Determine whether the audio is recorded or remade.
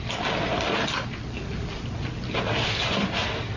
recorded